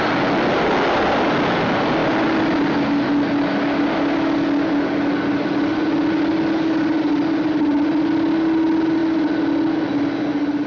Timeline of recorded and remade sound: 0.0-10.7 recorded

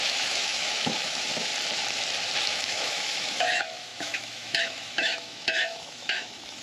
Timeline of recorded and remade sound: 0.0-1.5 remade; 1.5-2.4 recorded; 2.4-6.6 remade

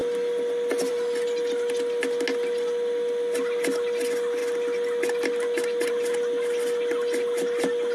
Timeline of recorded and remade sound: 0.0-7.9 recorded

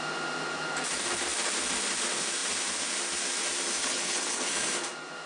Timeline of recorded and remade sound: 0.0-3.8 recorded; 3.8-4.5 remade; 4.5-5.3 recorded

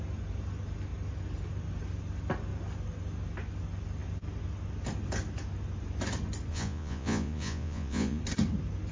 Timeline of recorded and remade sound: 0.0-6.5 recorded; 6.5-8.2 remade; 8.2-8.9 recorded

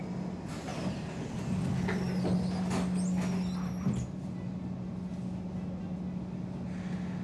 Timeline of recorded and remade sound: 0.0-7.2 recorded

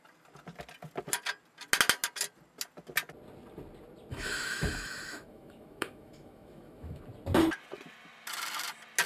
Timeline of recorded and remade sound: 0.0-4.1 recorded; 4.1-7.0 remade; 7.0-9.1 recorded